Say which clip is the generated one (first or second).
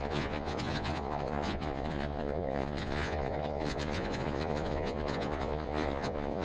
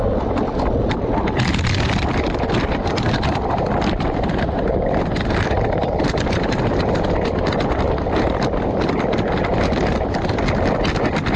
first